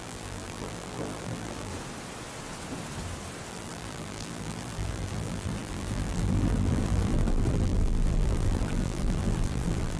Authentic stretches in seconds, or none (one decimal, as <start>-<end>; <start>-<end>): 1.7-3.5